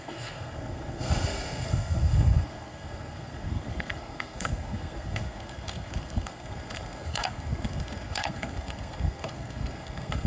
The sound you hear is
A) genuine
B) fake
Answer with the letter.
B